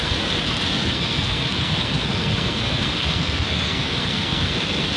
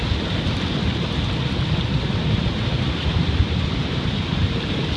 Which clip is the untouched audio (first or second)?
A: second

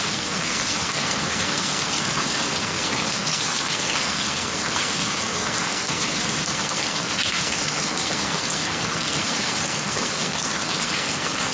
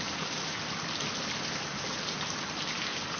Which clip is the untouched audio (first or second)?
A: second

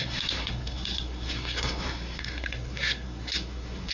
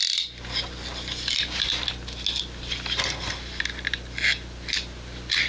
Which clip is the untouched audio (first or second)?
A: second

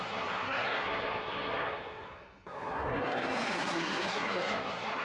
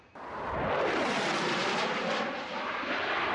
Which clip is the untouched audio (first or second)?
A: second